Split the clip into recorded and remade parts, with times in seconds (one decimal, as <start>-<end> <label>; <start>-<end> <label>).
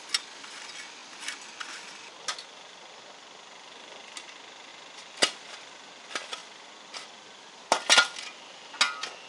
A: 0.0-9.3 recorded